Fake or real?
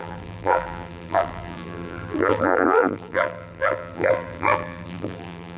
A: fake